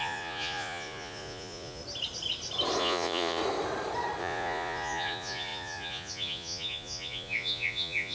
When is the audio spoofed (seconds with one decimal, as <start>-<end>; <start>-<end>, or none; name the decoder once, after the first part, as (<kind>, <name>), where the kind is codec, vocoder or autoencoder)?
0.0-1.8 (vocoder, Vocos); 2.8-3.4; 4.2-8.1